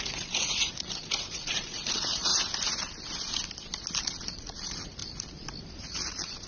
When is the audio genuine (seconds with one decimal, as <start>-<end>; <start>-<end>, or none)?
2.3-4.0; 5.0-5.8